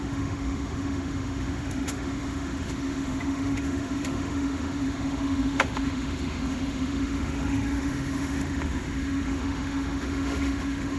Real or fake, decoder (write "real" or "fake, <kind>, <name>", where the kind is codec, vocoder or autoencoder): fake, autoencoder, DAC-VAE